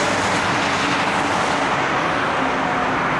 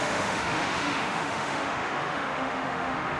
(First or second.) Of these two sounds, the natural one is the first